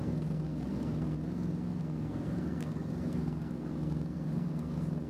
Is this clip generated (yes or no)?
yes